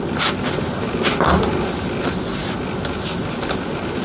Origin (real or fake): real